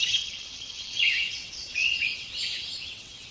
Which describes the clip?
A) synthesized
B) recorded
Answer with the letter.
A